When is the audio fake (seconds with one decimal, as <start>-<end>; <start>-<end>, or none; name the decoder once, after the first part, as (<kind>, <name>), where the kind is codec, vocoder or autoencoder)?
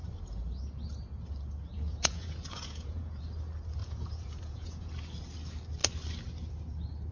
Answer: 1.7-3.2 (vocoder, Vocos); 3.8-4.9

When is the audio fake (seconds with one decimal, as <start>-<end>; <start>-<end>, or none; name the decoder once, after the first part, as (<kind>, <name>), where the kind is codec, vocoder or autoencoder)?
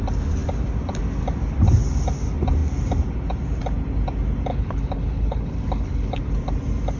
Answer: 4.5-6.2 (codec, HILCodec)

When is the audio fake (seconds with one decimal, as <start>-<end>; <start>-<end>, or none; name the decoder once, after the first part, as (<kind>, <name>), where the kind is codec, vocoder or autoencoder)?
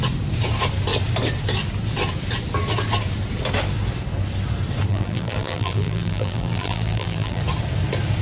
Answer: 4.9-7.4 (vocoder, BigVGAN v2)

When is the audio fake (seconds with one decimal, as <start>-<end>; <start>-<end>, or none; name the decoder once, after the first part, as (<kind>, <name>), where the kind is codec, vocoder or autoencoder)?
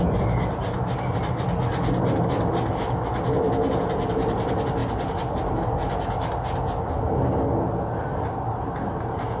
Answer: none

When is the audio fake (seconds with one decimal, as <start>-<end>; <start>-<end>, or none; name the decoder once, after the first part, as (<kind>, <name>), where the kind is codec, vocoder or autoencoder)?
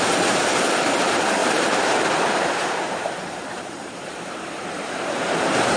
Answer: 0.0-5.8 (vocoder, BigVGAN v2)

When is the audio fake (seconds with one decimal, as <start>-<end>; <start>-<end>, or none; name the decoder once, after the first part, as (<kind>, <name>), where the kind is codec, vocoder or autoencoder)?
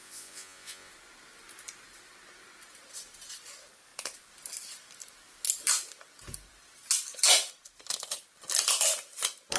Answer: 0.0-0.9 (vocoder, Vocos)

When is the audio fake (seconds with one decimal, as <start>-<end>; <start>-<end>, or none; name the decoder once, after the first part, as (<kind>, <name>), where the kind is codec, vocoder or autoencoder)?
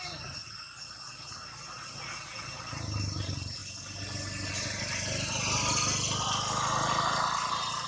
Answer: none